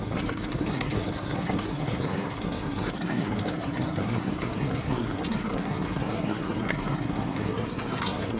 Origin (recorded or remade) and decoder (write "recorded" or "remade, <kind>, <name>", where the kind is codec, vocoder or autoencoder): remade, codec, SNAC